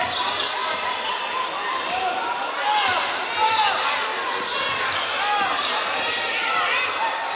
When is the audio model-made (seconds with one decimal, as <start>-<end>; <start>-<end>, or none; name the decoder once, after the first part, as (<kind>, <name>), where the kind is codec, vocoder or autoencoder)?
none